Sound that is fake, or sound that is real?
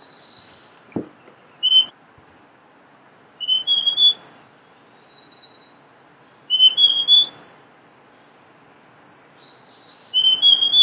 real